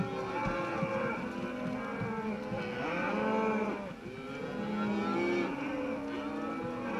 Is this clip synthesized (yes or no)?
no